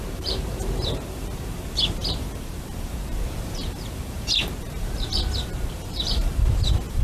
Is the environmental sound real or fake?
fake